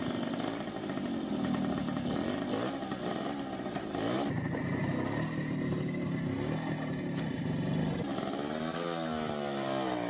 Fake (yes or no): no